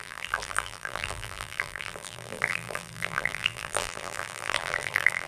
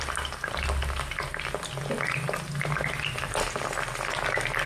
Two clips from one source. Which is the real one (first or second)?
second